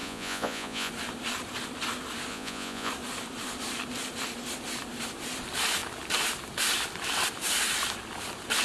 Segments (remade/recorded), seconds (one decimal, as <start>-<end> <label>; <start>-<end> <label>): 0.0-0.9 remade; 0.9-2.3 recorded; 2.3-2.9 remade; 2.9-8.6 recorded